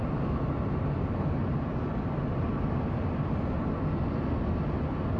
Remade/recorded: recorded